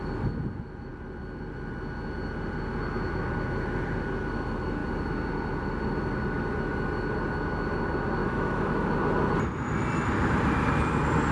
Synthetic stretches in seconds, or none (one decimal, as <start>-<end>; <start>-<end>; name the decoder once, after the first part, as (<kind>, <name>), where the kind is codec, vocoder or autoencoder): 8.2-8.9 (autoencoder, DAC-VAE)